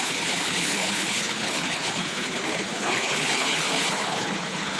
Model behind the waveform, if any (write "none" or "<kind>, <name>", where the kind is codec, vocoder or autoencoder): codec, HILCodec